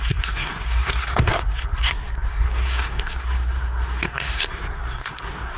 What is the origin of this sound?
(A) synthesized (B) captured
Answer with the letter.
A